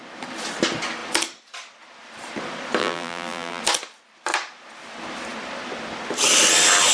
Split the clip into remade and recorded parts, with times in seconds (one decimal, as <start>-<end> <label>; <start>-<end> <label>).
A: 0.0-2.8 recorded; 2.8-3.6 remade; 3.6-6.9 recorded